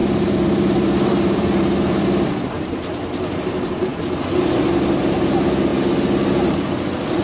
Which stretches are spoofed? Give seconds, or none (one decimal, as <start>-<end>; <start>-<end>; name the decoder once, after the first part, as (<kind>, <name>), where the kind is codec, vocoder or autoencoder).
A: 0.0-2.6 (vocoder, BigVGAN v2); 3.9-4.8